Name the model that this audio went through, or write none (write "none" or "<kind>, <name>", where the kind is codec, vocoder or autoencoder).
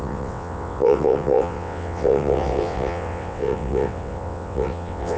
vocoder, WaveNeXt